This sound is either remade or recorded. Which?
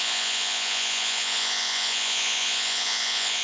remade